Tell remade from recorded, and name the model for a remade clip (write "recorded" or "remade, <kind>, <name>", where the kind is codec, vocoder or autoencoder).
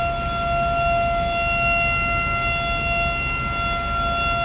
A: recorded